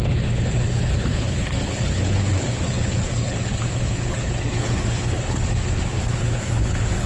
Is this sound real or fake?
fake